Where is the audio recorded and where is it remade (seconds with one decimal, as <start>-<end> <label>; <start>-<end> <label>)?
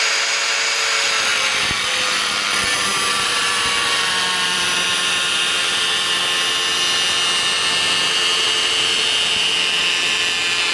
0.0-1.3 recorded; 1.3-6.2 remade; 6.2-8.4 recorded; 8.4-10.2 remade; 10.2-10.7 recorded